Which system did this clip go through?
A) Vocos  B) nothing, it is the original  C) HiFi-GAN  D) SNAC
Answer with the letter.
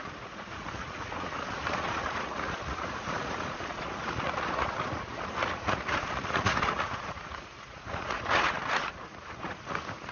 A